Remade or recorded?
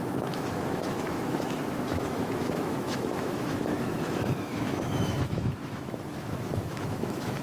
remade